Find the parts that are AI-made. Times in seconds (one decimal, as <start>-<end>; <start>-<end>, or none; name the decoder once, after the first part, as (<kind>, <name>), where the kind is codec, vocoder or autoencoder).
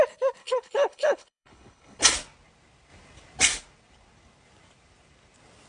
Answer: 0.4-2.0 (codec, HILCodec)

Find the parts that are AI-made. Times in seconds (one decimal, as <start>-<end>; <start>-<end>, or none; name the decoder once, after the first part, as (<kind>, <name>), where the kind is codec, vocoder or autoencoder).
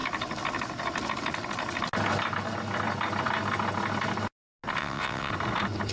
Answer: 4.8-5.3 (vocoder, WaveNeXt)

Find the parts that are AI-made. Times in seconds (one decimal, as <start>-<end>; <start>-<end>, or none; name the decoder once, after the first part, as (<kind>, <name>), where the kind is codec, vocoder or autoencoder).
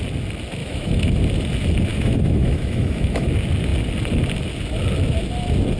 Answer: 0.6-1.1 (autoencoder, DAC-VAE); 1.9-3.3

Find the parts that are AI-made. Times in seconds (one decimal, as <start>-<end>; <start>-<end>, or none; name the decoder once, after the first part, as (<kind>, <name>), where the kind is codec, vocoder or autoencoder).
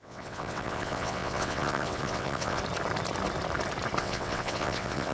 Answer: 0.0-2.6 (vocoder, WaveNeXt); 4.0-5.1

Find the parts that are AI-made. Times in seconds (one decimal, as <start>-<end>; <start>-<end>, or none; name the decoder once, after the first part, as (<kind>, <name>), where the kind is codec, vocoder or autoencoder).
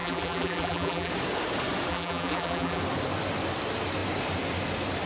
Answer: 0.0-1.1 (vocoder, BigVGAN v2); 1.9-2.8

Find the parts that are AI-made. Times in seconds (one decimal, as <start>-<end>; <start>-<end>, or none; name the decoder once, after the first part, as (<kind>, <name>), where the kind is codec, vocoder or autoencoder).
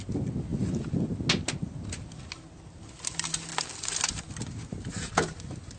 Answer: none